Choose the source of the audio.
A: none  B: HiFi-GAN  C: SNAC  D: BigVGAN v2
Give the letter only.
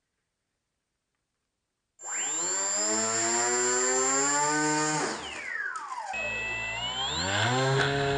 A